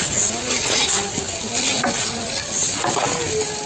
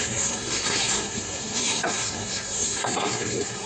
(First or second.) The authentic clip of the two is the first